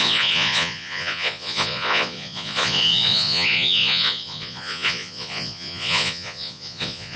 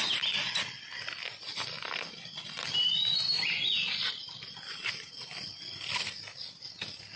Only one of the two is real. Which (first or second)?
second